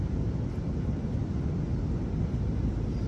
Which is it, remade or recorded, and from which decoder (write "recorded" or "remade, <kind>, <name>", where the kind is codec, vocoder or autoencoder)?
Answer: recorded